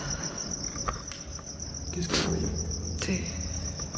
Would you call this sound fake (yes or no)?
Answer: no